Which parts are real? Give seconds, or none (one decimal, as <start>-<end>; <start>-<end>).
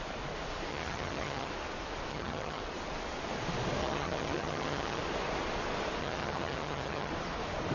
0.0-0.7; 1.5-2.1; 2.6-3.8; 5.0-6.0; 7.1-7.7